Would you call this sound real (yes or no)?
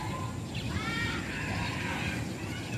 yes